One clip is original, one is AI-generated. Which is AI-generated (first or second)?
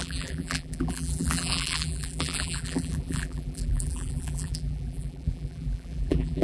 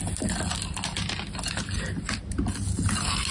first